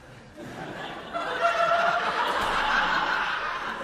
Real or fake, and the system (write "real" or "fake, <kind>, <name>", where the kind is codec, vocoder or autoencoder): real